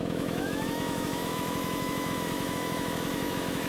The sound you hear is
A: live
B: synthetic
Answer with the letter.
B